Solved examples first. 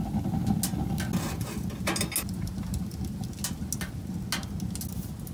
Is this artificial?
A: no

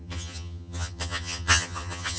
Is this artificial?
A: yes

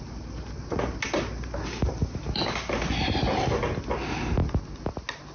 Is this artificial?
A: no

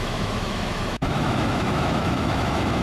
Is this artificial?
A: yes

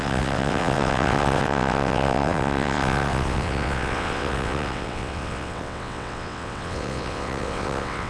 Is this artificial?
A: yes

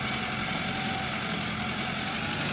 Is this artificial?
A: no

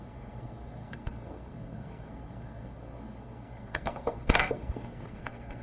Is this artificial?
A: yes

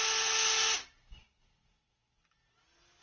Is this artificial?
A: no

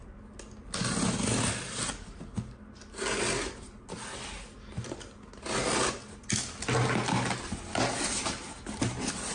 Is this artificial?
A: no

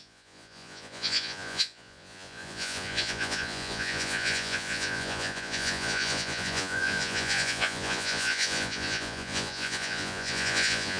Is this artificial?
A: yes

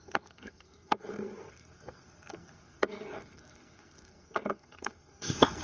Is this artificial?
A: yes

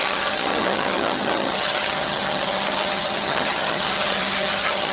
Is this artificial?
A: yes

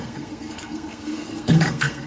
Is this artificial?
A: yes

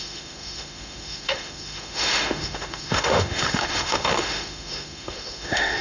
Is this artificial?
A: yes